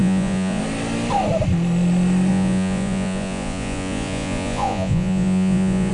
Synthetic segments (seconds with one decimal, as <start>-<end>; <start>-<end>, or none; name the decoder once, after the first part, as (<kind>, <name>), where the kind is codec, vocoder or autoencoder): 0.0-0.6 (vocoder, Vocos); 2.3-5.9